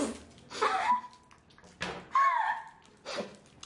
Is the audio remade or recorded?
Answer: recorded